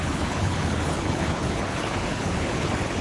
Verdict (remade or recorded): remade